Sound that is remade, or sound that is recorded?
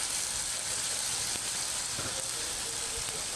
remade